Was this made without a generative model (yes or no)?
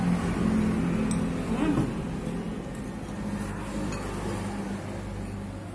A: yes